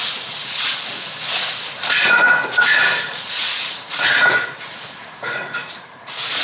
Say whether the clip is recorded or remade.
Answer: remade